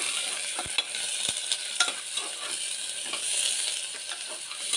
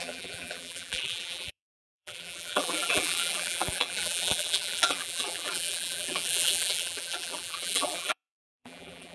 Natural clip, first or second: first